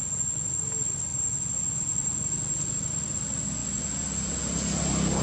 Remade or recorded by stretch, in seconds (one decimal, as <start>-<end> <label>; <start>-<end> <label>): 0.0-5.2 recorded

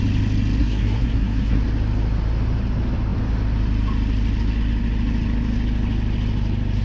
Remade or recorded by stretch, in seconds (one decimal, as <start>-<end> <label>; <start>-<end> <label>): 0.0-0.6 recorded; 0.6-1.6 remade; 1.6-6.8 recorded

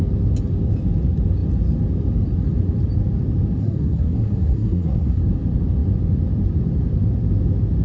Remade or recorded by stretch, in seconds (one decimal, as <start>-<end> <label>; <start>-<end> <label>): 0.0-3.6 recorded; 3.6-5.2 remade; 5.2-7.8 recorded

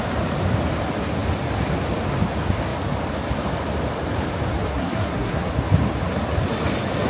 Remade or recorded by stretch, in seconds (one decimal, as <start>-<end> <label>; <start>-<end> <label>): 0.0-4.7 recorded; 4.7-5.5 remade; 5.5-7.1 recorded